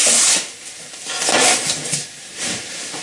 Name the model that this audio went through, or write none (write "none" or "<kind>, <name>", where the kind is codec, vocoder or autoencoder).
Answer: none